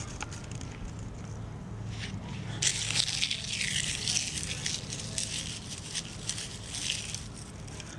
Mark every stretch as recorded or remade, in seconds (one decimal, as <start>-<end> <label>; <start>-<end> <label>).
0.0-8.0 recorded